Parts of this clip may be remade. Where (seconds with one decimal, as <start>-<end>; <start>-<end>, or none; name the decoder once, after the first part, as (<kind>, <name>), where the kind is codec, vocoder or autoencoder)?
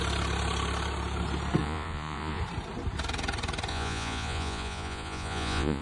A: 1.6-2.4 (vocoder, Vocos); 3.7-5.8